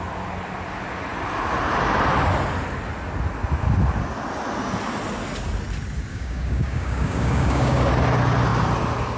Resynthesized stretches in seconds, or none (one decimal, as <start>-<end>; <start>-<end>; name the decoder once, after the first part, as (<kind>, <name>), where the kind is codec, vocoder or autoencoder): 6.1-7.9 (codec, DAC)